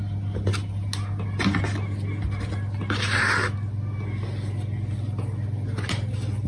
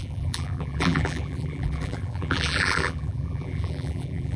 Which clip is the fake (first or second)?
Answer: second